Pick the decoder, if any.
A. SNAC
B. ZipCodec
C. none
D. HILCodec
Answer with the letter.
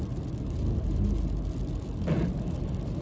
C